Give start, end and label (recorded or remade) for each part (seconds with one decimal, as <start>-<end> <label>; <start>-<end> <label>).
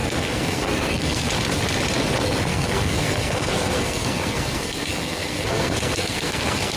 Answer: 0.0-1.3 remade; 1.3-2.5 recorded; 2.5-6.8 remade